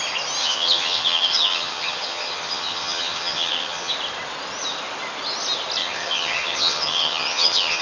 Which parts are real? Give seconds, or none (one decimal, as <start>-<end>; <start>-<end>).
0.0-0.4; 3.9-5.8